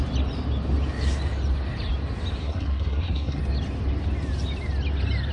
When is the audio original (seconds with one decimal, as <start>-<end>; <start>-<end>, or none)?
0.0-2.4; 3.4-5.3